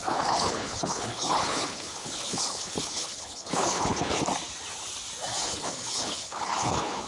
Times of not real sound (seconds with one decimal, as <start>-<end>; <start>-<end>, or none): 0.0-4.2; 5.4-7.1